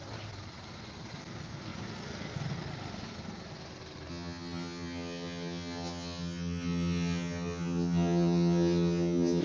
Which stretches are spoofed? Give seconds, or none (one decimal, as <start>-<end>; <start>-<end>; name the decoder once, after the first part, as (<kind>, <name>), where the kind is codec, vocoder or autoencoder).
4.1-9.4 (vocoder, HiFi-GAN)